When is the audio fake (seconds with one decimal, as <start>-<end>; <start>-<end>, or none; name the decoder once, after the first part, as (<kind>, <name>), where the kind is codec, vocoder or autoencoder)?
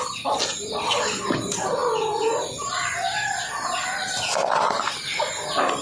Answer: none